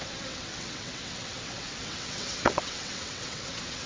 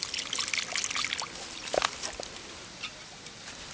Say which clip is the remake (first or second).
first